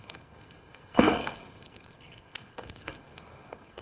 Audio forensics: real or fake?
fake